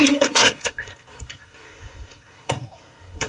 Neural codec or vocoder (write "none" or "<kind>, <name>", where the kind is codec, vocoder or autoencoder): codec, SNAC